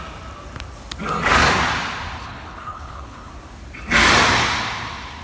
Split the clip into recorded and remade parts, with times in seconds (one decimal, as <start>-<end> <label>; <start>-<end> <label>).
0.0-2.2 recorded; 2.2-3.3 remade; 3.3-5.2 recorded